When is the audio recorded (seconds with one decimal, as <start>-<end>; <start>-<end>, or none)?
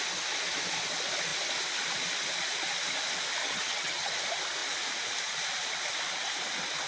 0.0-3.4; 4.1-6.9